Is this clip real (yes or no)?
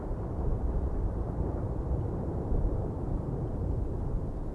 no